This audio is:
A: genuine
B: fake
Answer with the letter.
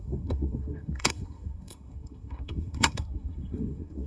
B